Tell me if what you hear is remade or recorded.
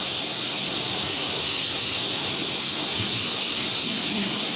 remade